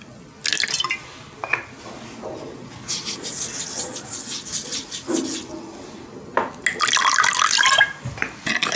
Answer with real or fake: real